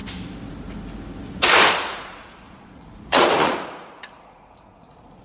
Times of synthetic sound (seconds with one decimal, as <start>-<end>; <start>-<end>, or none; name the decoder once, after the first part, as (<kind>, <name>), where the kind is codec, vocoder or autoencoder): 1.9-5.2 (vocoder, Vocos)